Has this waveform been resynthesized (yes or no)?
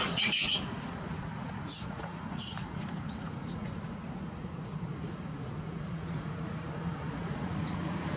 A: yes